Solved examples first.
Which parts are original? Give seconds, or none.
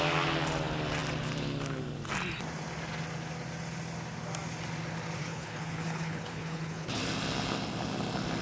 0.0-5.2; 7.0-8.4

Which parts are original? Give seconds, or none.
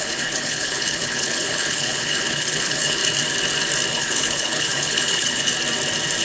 3.0-3.9; 5.5-6.2